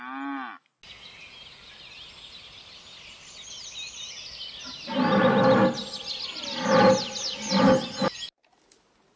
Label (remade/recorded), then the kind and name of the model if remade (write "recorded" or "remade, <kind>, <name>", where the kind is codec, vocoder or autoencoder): recorded